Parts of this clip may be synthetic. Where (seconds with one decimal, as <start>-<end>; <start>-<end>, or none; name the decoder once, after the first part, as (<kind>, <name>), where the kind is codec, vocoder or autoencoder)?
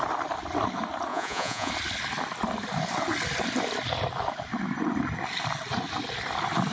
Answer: 1.1-1.7 (vocoder, Vocos)